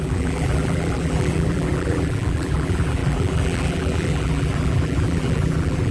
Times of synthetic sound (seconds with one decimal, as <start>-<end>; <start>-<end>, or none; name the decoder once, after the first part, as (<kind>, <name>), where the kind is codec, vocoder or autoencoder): 0.0-5.9 (vocoder, BigVGAN v2)